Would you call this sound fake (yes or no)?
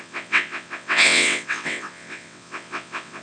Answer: yes